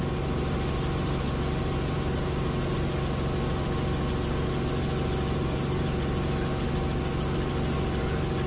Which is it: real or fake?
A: real